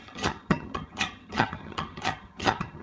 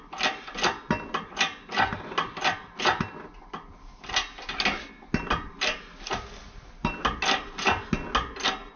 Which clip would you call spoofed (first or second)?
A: first